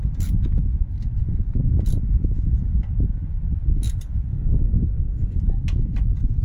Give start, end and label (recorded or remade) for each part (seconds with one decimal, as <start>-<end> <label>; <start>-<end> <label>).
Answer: 0.0-4.3 recorded; 4.3-5.4 remade; 5.4-6.4 recorded